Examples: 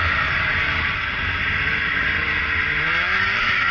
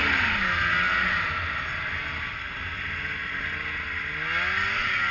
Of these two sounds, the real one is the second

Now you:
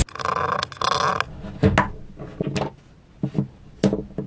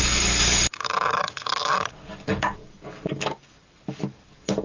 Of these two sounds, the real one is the first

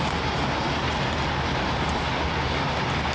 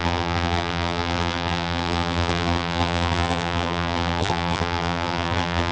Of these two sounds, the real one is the first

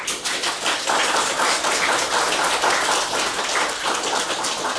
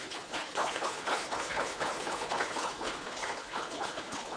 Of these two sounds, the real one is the first